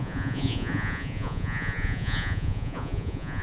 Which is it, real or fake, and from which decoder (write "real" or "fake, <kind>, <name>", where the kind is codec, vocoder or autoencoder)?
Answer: fake, vocoder, Vocos